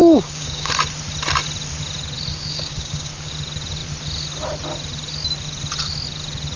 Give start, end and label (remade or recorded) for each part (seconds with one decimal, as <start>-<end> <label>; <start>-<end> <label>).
0.0-0.7 remade; 0.7-2.3 recorded; 2.3-3.3 remade; 3.3-6.6 recorded